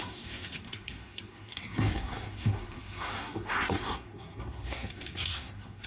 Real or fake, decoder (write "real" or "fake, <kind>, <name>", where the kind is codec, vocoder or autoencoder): fake, codec, SNAC